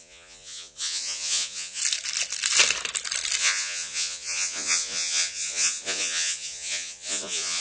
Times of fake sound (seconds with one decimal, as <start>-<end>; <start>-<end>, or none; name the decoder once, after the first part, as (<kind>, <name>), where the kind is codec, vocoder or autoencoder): 0.0-1.8 (vocoder, Vocos); 3.4-7.6